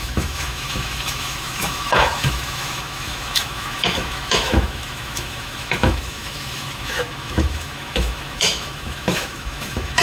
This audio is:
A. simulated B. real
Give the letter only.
A